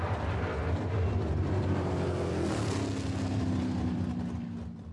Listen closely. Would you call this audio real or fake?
real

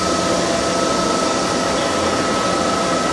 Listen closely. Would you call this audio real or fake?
real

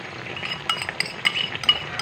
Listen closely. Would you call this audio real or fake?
real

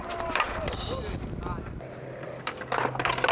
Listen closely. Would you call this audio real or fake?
real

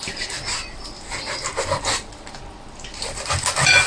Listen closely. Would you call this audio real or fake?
real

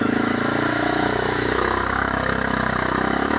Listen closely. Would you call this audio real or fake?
fake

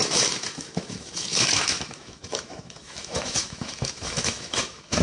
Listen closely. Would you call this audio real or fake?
fake